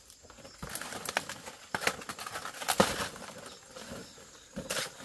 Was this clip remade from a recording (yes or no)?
no